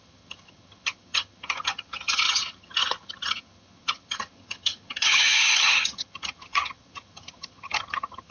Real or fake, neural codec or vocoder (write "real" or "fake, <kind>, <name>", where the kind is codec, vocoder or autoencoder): fake, vocoder, HiFi-GAN